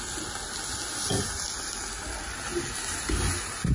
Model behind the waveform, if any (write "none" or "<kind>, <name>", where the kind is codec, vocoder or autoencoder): none